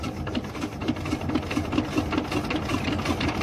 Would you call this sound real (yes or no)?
yes